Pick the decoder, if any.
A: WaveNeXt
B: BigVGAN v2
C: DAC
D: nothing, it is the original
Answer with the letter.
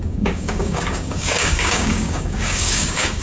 C